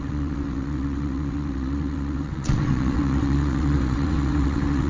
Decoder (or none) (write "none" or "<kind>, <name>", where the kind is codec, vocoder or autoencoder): vocoder, WaveNeXt